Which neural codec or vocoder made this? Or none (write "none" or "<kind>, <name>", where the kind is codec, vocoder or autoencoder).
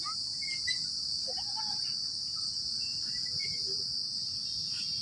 none